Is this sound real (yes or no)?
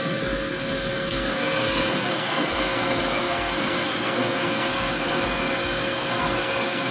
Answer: no